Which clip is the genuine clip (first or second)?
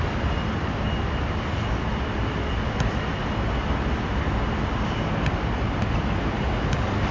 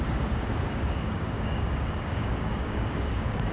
first